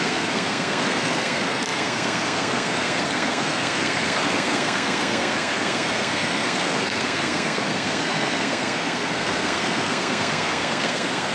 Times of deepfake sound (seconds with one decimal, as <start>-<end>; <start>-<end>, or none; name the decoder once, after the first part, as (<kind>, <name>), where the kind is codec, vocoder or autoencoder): 0.0-11.3 (codec, SNAC)

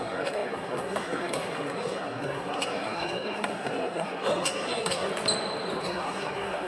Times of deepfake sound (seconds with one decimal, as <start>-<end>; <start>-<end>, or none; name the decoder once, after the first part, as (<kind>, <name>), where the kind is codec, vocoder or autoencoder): 0.0-5.1 (codec, SNAC); 5.8-6.7

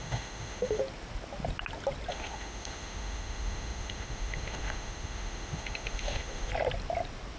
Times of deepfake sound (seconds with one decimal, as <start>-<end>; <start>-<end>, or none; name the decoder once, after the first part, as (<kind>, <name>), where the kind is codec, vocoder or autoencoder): 0.0-0.8 (autoencoder, DAC-VAE); 2.1-6.5

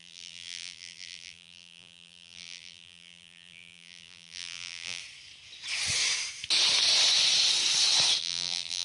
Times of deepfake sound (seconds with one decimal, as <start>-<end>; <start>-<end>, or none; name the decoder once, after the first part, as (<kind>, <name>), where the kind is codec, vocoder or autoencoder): 0.0-5.0 (vocoder, BigVGAN v2); 8.2-8.8